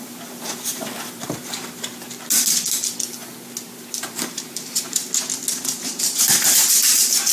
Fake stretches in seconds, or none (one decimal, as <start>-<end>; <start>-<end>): 0.0-1.9; 4.1-5.0; 5.6-7.3